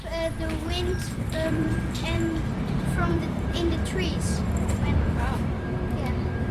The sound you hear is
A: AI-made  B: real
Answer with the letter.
A